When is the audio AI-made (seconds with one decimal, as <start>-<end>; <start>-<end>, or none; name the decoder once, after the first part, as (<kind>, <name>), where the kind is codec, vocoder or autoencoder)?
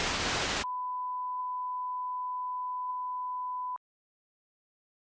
none